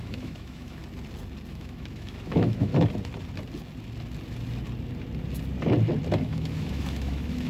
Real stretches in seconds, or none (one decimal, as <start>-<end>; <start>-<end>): 0.8-1.5; 2.7-6.2